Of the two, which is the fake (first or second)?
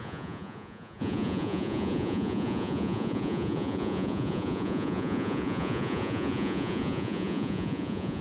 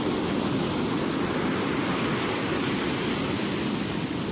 first